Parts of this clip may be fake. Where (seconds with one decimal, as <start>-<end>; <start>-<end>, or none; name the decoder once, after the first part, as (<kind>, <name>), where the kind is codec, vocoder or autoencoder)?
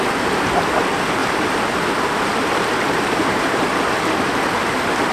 1.2-3.9 (vocoder, BigVGAN v2)